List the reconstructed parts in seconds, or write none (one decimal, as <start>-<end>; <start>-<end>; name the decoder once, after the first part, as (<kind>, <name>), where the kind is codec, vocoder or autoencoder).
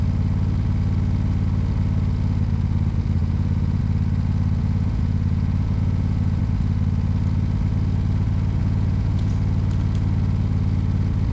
3.2-3.8 (vocoder, Vocos); 4.6-6.4; 8.6-9.3